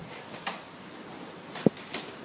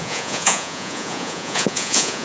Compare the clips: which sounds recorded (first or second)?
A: first